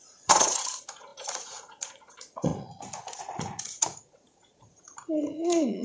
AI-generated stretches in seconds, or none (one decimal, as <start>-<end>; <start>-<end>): 0.0-5.8